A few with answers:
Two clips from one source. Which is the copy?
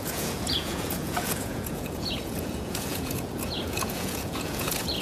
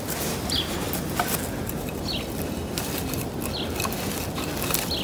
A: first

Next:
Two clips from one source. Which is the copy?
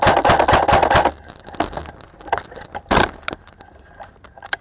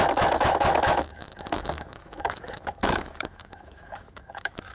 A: second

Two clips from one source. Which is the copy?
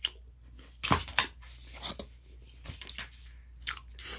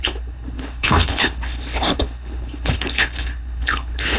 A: second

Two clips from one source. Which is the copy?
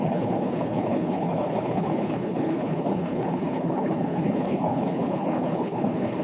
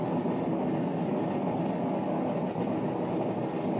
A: first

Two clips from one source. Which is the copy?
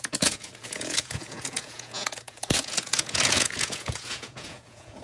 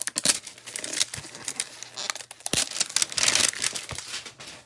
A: first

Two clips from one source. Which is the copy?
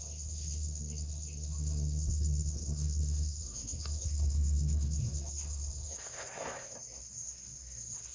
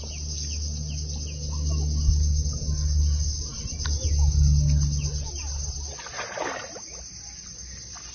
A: first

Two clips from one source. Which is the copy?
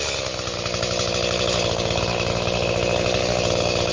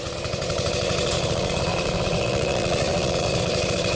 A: second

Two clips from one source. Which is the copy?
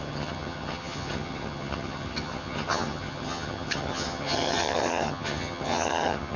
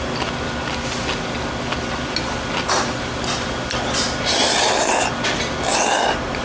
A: first